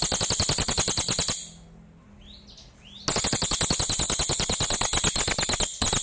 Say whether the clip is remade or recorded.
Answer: recorded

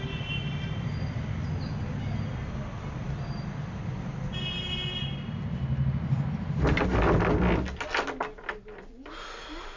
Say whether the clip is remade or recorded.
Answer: recorded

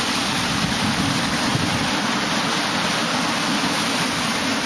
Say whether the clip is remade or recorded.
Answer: recorded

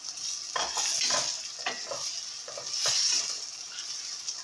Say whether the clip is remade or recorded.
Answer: recorded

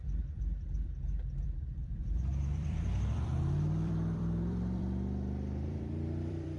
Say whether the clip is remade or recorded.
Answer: remade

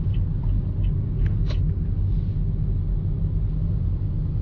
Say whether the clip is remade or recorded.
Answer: recorded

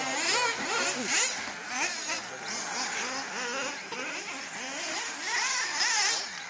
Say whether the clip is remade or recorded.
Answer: recorded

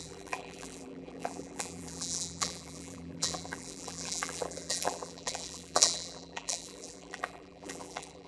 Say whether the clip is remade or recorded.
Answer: remade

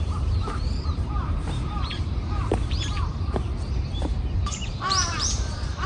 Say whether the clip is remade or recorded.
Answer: remade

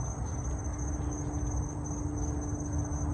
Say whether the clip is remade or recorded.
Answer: recorded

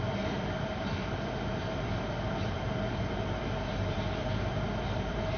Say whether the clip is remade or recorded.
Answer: remade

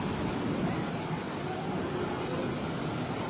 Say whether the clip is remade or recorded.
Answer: remade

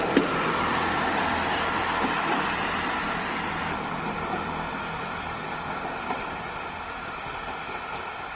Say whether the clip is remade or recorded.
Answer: remade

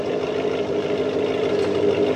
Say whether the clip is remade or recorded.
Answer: recorded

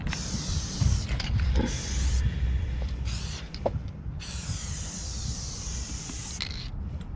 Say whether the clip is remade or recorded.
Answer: remade